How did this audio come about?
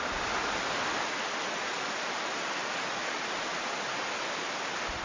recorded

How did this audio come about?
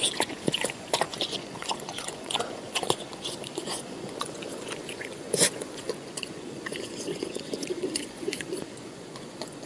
remade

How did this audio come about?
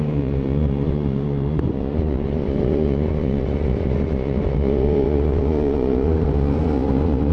remade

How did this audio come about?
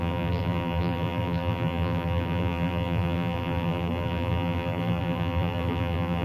remade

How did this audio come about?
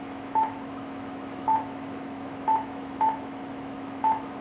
remade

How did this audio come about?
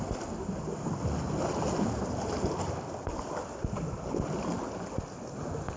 recorded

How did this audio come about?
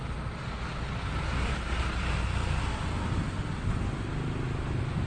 recorded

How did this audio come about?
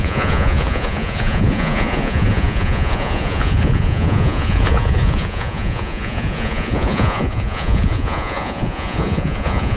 remade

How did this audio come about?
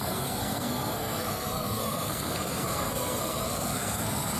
remade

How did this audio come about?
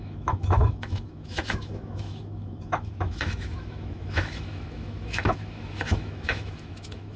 remade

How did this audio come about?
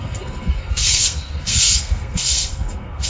remade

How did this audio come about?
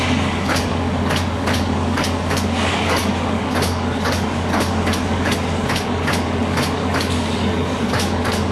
remade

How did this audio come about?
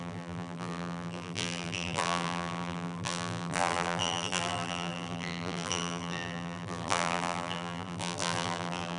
remade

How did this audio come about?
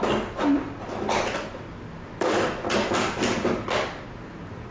recorded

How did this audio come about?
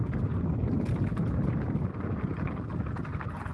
recorded